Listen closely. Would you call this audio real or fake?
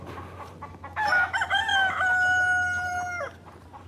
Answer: real